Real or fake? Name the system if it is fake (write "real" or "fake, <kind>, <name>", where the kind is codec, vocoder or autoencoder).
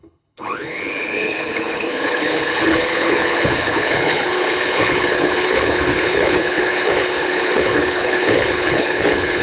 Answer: fake, codec, HILCodec